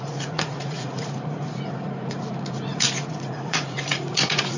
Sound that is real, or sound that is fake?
fake